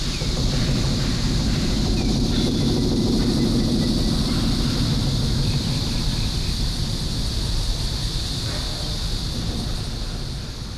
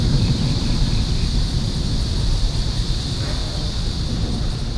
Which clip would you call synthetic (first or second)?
second